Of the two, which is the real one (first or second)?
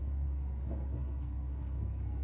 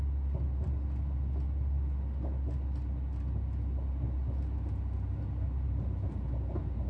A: second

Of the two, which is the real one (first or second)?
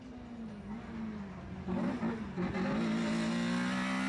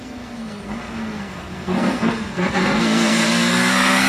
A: first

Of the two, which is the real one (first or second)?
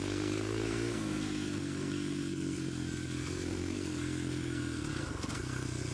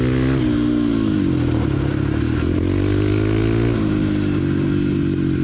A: second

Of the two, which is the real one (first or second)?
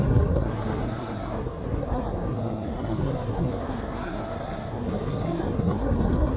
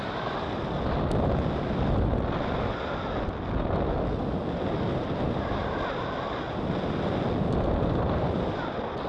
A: second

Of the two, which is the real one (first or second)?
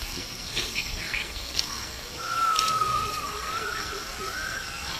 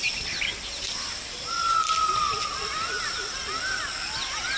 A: second